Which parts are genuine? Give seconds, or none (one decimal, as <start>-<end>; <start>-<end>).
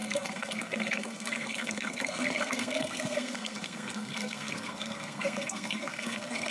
none